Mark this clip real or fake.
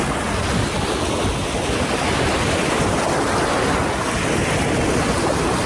real